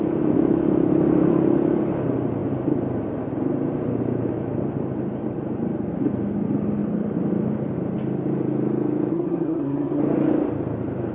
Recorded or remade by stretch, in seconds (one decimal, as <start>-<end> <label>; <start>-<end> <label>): 0.0-9.1 recorded; 9.1-10.0 remade; 10.0-11.1 recorded